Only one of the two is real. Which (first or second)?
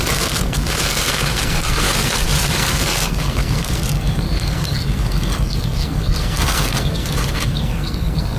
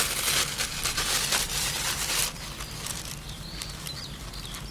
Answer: second